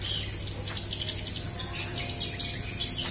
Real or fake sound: real